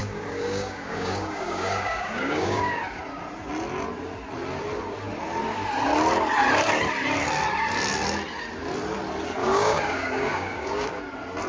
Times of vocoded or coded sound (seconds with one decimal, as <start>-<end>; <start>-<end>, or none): 0.0-2.8; 9.4-11.0